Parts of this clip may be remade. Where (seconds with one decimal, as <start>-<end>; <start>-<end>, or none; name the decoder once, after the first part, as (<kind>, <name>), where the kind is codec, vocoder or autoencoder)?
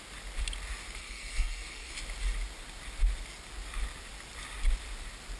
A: 1.0-1.9 (codec, SNAC)